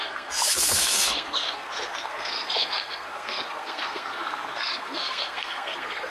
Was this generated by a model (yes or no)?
yes